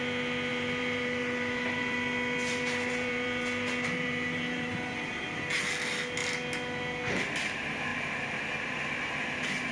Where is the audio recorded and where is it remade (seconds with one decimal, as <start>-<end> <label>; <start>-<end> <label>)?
0.0-0.5 recorded; 0.5-5.4 remade; 5.4-9.7 recorded